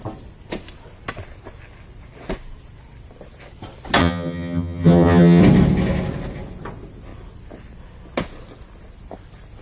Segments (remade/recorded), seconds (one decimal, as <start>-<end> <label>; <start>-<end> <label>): 0.0-4.0 recorded; 4.0-5.4 remade; 5.4-9.6 recorded